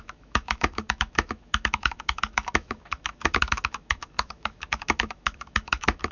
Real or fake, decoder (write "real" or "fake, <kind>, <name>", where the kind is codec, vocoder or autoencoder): fake, autoencoder, DAC-VAE